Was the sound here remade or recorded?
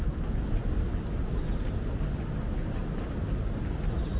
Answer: recorded